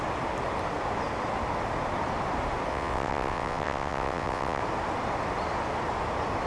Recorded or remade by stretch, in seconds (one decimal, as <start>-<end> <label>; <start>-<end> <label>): 0.0-2.7 recorded; 2.7-4.6 remade; 4.6-6.5 recorded